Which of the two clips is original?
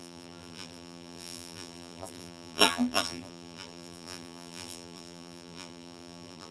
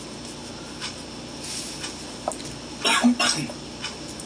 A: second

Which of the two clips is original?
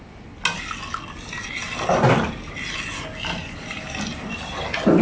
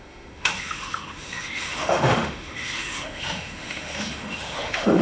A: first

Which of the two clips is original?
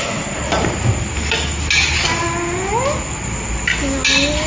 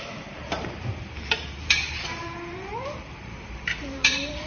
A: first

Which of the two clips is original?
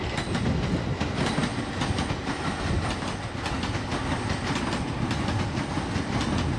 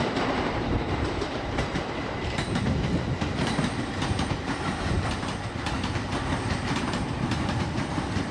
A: first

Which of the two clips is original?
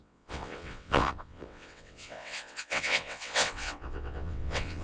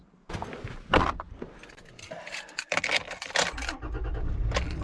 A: second